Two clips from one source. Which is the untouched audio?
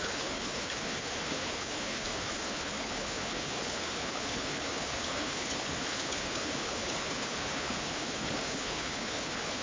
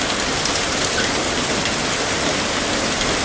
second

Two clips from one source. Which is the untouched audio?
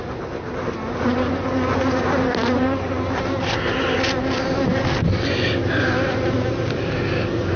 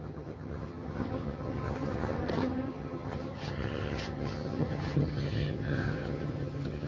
first